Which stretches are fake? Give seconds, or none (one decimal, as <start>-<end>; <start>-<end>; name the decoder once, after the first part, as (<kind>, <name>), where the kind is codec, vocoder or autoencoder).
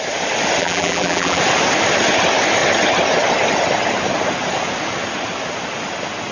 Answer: 0.6-1.4 (vocoder, BigVGAN v2)